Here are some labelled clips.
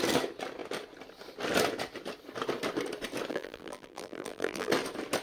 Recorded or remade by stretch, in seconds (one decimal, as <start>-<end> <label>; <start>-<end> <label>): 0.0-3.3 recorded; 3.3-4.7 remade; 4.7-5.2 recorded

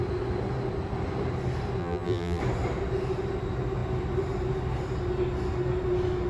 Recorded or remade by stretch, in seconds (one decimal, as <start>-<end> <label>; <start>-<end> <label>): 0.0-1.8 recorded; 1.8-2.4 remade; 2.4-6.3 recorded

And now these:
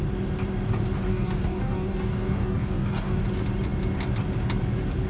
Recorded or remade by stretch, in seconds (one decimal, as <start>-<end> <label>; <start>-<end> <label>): 0.0-1.1 recorded; 1.1-3.2 remade; 3.2-5.1 recorded

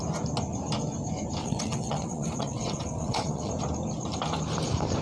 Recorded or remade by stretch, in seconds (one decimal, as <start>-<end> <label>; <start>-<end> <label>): 0.0-1.4 recorded; 1.4-3.5 remade; 3.5-5.0 recorded

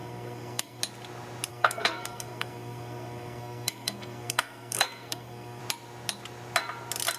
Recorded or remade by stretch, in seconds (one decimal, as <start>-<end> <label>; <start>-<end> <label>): 0.0-0.8 remade; 0.8-1.5 recorded; 1.5-5.6 remade; 5.6-7.2 recorded

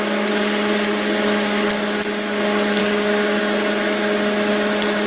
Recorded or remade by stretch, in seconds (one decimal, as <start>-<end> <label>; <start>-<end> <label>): 0.0-2.8 recorded; 2.8-3.4 remade; 3.4-5.1 recorded